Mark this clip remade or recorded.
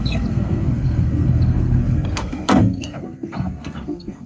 remade